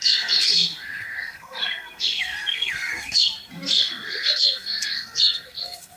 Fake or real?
fake